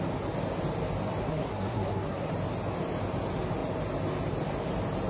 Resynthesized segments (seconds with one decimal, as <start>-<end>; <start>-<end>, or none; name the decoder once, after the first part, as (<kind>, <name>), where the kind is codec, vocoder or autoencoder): 1.2-2.3 (codec, SNAC)

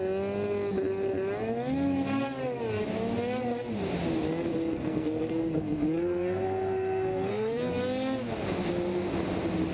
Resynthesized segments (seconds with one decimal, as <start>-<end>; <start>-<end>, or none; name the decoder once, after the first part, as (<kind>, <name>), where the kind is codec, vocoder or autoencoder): 4.5-7.7 (codec, SNAC)

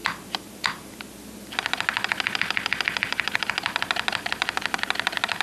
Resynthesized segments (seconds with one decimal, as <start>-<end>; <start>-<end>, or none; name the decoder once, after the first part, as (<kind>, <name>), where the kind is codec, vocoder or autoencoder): 0.0-1.1 (vocoder, BigVGAN v2)

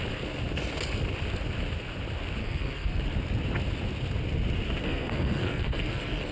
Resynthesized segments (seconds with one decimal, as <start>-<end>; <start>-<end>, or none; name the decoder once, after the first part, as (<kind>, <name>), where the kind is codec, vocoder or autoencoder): 2.4-3.0 (codec, SNAC); 4.8-6.3

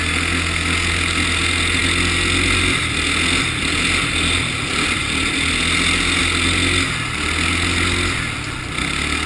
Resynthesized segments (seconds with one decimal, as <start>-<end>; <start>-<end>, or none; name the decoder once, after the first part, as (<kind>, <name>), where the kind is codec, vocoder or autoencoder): none